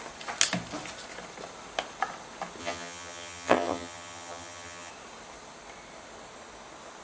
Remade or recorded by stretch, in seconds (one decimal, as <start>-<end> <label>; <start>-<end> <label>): 0.0-2.6 recorded; 2.6-4.9 remade; 4.9-7.0 recorded